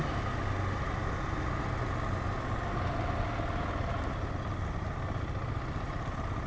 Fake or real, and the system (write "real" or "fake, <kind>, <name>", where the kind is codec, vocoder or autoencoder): real